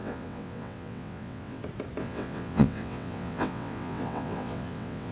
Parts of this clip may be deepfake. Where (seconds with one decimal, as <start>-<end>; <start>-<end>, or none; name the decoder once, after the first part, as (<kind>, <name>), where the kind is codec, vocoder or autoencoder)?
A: 0.0-1.6 (vocoder, WaveNeXt); 2.0-5.1